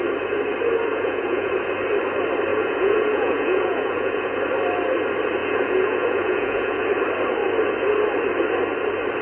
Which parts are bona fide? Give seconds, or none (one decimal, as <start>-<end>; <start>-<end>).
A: 0.0-0.9; 1.5-2.5; 4.4-5.4; 6.8-9.2